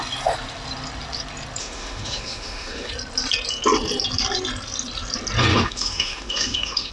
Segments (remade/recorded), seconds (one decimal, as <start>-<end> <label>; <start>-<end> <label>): 0.0-1.6 recorded; 1.6-2.9 remade; 2.9-5.5 recorded; 5.5-6.9 remade